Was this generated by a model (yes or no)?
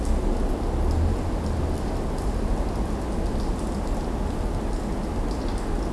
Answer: no